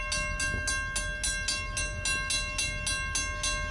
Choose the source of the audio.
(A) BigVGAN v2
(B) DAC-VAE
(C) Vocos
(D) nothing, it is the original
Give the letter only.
D